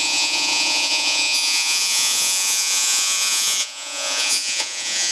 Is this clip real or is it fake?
fake